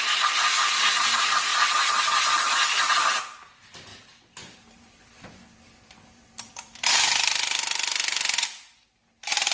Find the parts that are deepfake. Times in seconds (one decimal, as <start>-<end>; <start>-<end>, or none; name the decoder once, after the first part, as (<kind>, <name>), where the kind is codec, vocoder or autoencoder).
1.5-2.9 (vocoder, BigVGAN v2); 3.9-7.2